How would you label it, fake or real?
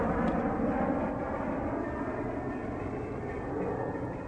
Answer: real